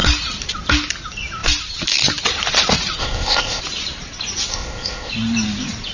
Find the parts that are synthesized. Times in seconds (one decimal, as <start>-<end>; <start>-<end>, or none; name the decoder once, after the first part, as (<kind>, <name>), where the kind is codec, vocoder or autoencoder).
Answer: 3.0-3.6 (codec, ZipCodec); 4.5-5.1